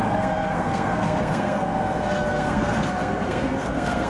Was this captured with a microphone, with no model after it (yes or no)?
no